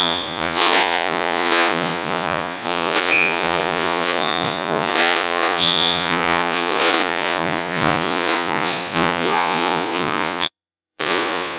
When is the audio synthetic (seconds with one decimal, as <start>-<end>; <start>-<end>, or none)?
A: 0.0-11.6